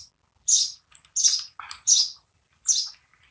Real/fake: real